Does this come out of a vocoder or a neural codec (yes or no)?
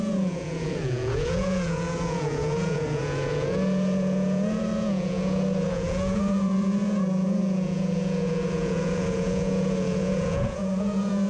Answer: yes